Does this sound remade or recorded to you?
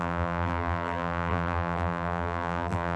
remade